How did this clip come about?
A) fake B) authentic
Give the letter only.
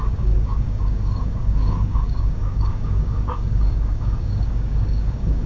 A